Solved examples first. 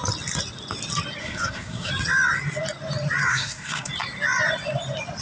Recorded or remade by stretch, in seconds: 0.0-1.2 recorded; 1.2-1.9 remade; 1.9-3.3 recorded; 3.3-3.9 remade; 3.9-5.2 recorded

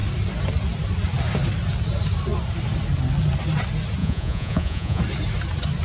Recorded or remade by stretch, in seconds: 0.0-4.0 recorded; 4.0-5.0 remade; 5.0-5.8 recorded

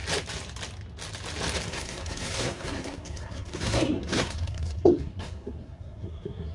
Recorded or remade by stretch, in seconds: 0.0-1.7 recorded; 1.7-6.5 remade

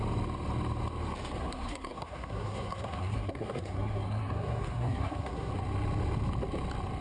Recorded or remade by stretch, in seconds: 0.0-1.4 recorded; 1.4-5.5 remade; 5.5-7.0 recorded